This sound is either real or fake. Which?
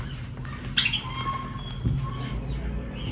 real